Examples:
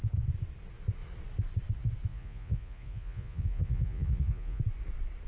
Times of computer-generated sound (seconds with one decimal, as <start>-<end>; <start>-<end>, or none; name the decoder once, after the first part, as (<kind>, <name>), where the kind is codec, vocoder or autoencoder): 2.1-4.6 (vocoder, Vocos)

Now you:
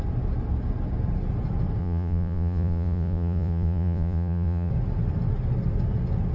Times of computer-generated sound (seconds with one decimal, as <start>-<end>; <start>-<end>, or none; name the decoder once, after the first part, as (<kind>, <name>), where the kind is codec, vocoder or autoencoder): 1.8-4.7 (vocoder, Vocos)

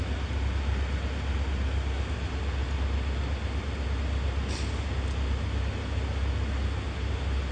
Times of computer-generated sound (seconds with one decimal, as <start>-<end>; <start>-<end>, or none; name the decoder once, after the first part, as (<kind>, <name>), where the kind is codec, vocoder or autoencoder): none

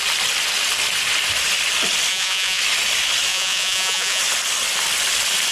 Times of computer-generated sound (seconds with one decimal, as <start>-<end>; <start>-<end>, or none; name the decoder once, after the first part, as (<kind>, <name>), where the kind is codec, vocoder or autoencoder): 2.1-2.6 (vocoder, Vocos); 3.3-4.2

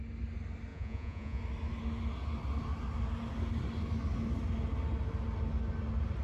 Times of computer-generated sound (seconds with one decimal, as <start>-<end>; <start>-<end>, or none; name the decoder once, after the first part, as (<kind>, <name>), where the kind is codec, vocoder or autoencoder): 0.7-1.4 (vocoder, Vocos)